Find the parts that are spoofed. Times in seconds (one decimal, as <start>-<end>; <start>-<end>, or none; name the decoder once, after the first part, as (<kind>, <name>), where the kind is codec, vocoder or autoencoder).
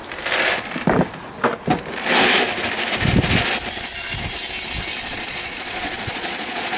4.9-6.8 (vocoder, Vocos)